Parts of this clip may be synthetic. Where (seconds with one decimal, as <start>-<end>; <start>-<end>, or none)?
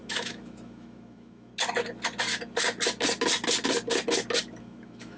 0.0-1.5; 4.6-5.2